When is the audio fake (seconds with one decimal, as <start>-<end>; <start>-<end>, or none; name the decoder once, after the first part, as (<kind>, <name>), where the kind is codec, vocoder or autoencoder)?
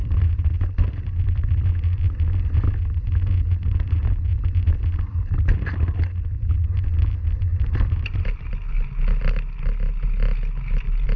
0.0-1.8 (vocoder, BigVGAN v2); 7.5-8.5